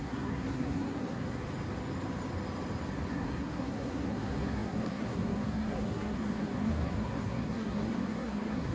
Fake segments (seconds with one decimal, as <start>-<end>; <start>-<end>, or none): 0.0-1.4; 3.1-8.7